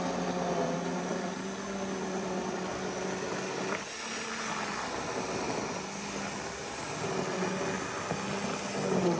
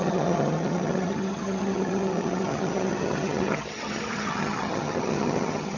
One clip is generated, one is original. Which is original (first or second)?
first